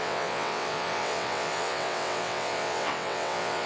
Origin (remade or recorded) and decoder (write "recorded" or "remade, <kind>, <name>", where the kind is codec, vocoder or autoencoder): remade, vocoder, WaveNeXt